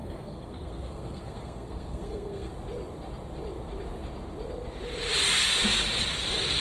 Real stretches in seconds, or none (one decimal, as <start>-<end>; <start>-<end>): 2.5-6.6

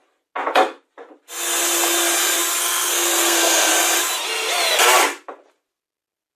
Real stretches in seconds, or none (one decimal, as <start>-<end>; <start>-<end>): 0.0-2.6; 3.7-6.4

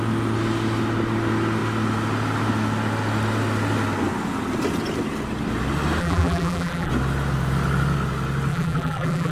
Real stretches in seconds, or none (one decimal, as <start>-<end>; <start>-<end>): 0.0-6.0; 6.9-8.5